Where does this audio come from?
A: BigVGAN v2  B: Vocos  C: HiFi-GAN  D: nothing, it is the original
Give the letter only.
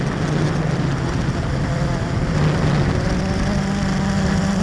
D